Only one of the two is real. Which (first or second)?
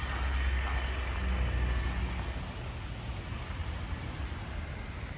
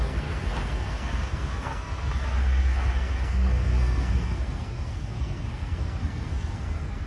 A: first